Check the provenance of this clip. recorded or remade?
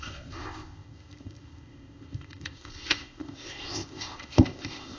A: remade